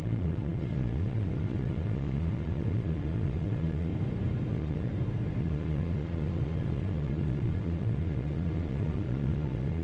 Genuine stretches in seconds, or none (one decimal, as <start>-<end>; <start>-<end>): 3.9-4.5; 4.9-5.4